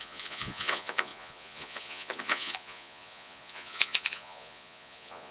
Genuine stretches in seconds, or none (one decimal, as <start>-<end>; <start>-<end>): none